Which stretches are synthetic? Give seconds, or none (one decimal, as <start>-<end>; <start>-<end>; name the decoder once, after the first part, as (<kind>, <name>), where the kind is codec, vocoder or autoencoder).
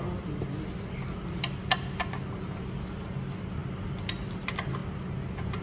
none